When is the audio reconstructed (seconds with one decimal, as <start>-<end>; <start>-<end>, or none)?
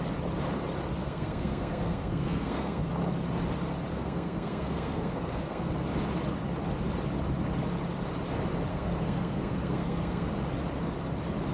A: 1.0-2.9; 3.9-5.7; 8.7-10.3